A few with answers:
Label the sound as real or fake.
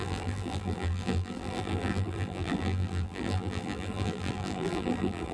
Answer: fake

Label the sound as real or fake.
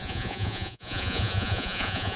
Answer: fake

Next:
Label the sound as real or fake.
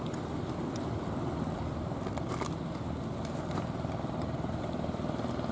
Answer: real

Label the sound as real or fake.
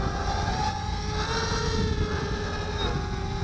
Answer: real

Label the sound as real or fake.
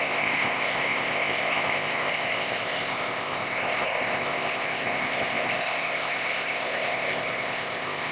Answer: fake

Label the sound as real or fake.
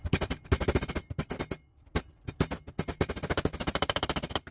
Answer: real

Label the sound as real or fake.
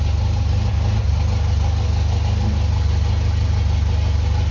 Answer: real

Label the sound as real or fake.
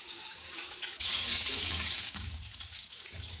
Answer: fake